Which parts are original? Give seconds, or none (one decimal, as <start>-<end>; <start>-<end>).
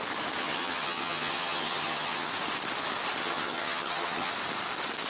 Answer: 0.0-0.4; 2.3-3.2; 4.3-5.1